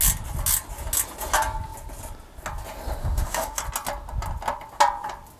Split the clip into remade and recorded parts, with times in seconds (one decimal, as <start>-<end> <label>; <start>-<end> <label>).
0.0-3.0 recorded; 3.0-3.6 remade; 3.6-5.4 recorded